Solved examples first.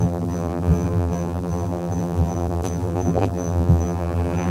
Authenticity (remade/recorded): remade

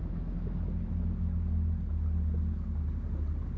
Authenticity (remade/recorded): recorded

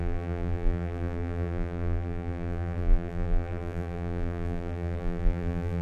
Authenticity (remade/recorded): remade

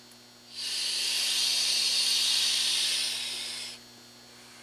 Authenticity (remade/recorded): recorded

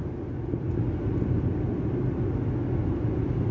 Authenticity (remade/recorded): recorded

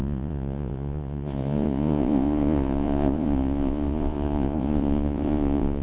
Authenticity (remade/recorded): remade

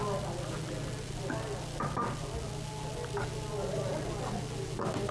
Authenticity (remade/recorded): recorded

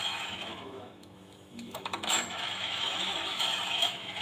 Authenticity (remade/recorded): remade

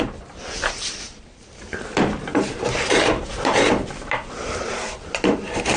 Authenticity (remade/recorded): remade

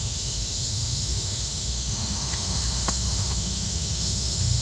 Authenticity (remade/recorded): remade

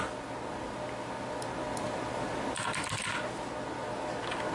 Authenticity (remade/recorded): recorded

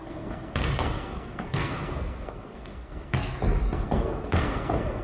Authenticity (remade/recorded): remade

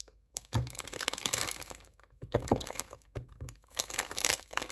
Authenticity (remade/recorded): remade